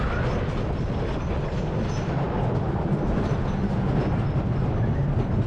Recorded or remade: recorded